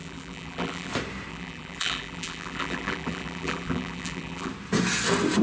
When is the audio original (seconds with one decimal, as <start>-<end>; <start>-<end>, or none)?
0.9-1.3; 4.5-5.4